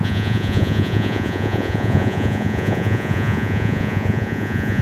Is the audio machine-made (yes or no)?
yes